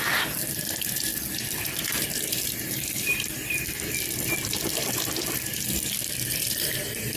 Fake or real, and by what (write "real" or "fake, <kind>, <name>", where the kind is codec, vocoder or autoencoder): fake, vocoder, BigVGAN v2